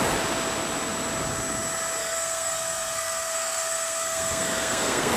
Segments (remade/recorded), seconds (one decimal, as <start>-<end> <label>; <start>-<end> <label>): 0.0-2.0 recorded; 2.0-5.2 remade